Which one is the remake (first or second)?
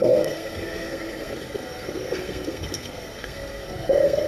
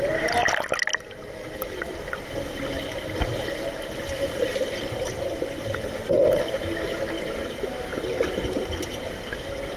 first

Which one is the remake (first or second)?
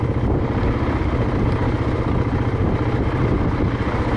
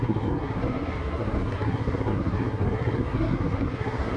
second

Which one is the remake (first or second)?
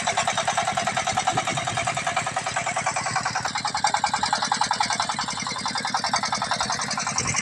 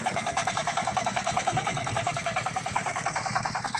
second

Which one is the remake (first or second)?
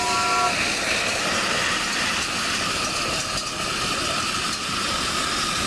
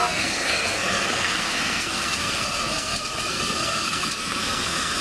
second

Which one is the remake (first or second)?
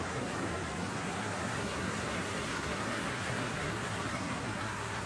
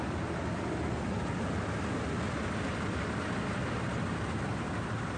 first